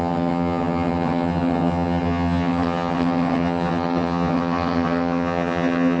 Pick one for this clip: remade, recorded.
remade